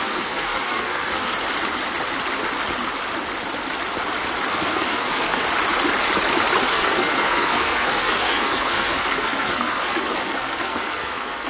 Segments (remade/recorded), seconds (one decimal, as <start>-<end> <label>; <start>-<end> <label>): 0.0-1.3 remade; 1.3-4.5 recorded; 4.5-5.4 remade; 5.4-6.7 recorded; 6.7-11.5 remade